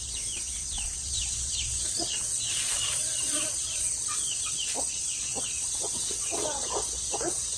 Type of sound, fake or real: fake